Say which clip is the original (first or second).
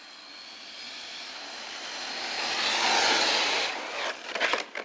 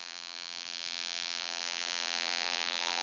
first